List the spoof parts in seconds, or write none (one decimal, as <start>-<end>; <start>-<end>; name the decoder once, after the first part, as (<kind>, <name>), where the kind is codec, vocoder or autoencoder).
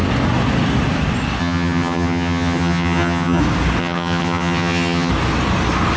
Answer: 1.4-3.4 (vocoder, HiFi-GAN); 3.8-5.1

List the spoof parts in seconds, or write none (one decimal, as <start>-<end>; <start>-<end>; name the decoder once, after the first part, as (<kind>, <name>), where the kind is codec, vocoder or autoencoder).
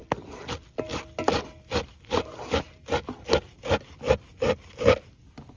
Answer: none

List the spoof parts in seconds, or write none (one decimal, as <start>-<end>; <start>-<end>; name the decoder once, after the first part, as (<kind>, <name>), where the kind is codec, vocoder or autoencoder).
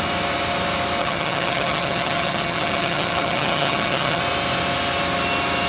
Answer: 1.0-4.2 (vocoder, HiFi-GAN)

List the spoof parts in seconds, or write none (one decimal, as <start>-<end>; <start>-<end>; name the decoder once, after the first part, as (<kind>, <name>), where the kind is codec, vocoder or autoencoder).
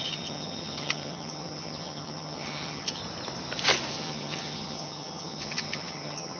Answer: 0.0-3.0 (vocoder, HiFi-GAN); 3.9-6.4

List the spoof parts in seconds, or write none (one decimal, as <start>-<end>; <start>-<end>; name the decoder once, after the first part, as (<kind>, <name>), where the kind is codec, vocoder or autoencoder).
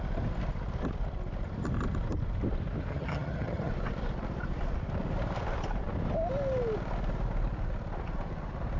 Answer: 2.9-3.7 (vocoder, HiFi-GAN)